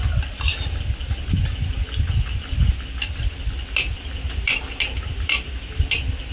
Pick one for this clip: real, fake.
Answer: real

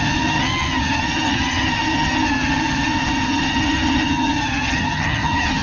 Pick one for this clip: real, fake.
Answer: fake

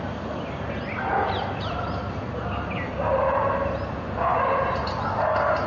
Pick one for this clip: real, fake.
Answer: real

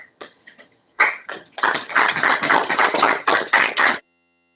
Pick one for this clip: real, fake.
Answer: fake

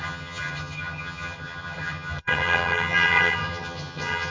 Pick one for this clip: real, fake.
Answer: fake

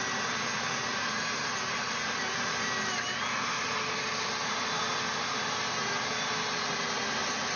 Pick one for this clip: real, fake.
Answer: real